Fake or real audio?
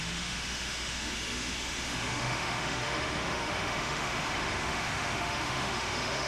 fake